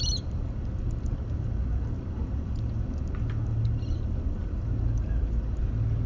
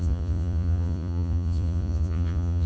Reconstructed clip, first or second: second